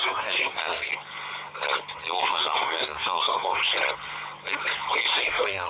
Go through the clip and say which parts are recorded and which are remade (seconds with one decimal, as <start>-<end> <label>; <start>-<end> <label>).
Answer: 0.0-0.9 remade; 0.9-2.2 recorded; 2.2-3.6 remade; 3.6-5.1 recorded; 5.1-5.7 remade